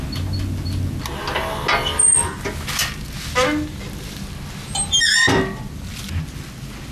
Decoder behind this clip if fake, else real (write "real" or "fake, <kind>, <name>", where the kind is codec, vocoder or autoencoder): real